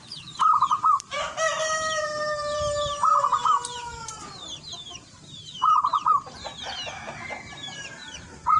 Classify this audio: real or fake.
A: fake